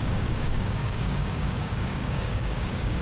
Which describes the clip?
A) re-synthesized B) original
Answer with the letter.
A